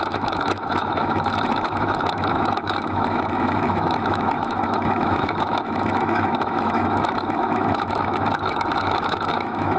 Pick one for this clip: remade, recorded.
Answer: remade